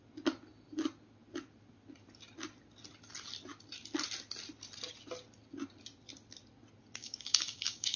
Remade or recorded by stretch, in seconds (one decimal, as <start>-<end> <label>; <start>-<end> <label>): 0.0-7.0 recorded; 7.0-8.0 remade